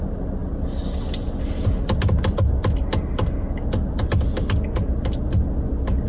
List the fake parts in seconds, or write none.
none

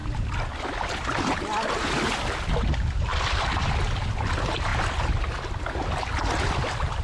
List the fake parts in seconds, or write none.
3.1-3.7 (vocoder, BigVGAN v2)

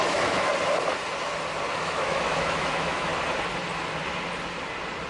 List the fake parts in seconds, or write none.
0.0-0.5 (autoencoder, DAC-VAE); 1.8-3.1

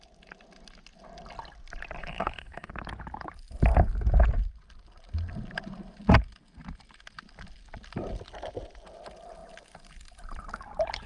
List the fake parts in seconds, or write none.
2.0-2.7 (codec, HILCodec)

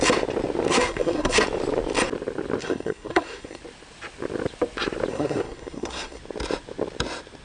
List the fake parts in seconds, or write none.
0.7-1.4 (codec, SNAC); 2.6-3.6; 5.1-6.2

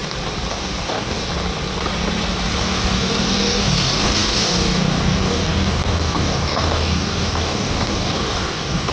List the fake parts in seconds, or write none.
0.5-1.3 (codec, DAC); 2.6-8.9

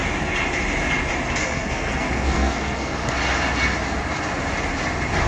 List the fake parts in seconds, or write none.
1.4-3.0 (codec, SNAC)